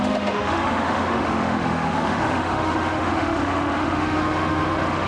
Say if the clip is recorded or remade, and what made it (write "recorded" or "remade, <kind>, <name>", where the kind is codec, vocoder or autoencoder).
remade, autoencoder, DAC-VAE